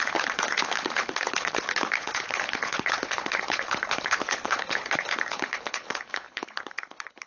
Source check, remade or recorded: remade